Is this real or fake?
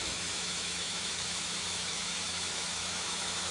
fake